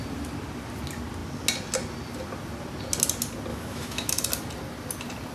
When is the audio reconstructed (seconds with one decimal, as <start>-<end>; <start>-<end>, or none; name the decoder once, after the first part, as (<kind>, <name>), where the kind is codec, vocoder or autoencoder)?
3.5-4.1 (autoencoder, DAC-VAE)